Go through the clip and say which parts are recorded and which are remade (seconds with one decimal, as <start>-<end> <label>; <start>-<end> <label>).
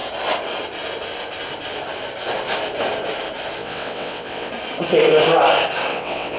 0.0-3.6 recorded; 3.6-4.5 remade; 4.5-5.9 recorded; 5.9-6.4 remade